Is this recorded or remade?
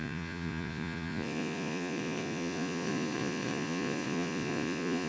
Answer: remade